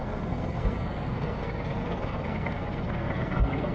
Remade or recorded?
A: remade